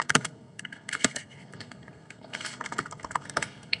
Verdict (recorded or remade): remade